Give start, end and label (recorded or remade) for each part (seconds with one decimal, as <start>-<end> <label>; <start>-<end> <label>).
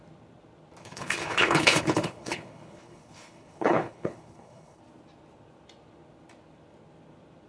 0.0-0.8 recorded; 0.8-4.8 remade; 4.8-7.5 recorded